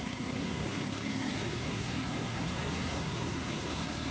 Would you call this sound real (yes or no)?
no